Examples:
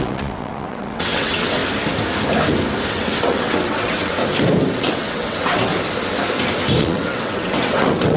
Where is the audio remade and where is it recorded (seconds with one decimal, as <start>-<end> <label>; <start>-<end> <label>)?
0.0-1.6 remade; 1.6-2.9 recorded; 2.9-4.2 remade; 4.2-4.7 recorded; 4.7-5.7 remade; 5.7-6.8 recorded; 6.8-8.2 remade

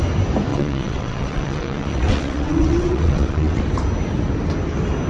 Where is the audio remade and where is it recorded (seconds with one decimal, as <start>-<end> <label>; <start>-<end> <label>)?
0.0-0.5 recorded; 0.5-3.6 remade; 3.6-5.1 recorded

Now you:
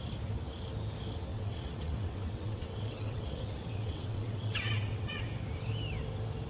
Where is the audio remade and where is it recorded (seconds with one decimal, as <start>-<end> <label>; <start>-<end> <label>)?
0.0-1.3 recorded; 1.3-5.2 remade; 5.2-6.5 recorded

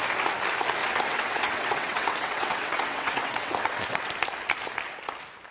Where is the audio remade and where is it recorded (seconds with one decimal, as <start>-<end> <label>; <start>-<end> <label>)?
0.0-0.8 recorded; 0.8-4.1 remade; 4.1-5.5 recorded

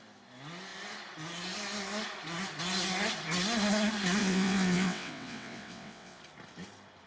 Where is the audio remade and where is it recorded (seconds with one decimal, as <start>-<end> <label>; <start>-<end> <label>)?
0.0-4.2 recorded; 4.2-6.2 remade; 6.2-7.1 recorded

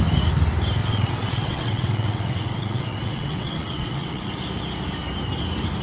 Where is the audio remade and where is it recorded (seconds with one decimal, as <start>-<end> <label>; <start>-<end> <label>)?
0.0-0.8 recorded; 0.8-4.3 remade; 4.3-5.8 recorded